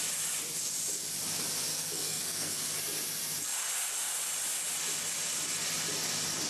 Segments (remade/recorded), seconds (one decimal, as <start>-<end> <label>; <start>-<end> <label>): 0.0-1.7 recorded; 1.7-2.8 remade; 2.8-6.5 recorded